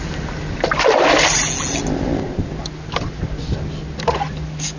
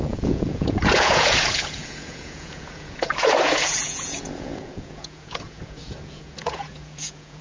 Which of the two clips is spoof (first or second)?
second